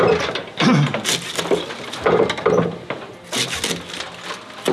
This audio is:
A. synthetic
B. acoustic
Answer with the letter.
B